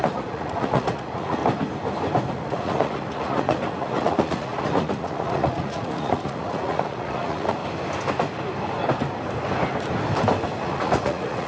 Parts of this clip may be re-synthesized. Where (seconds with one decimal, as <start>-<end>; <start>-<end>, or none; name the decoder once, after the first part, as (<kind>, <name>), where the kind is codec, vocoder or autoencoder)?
0.0-1.4 (vocoder, Vocos); 2.3-7.6; 10.6-11.5